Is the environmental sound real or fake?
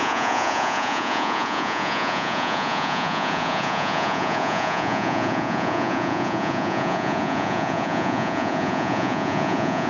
fake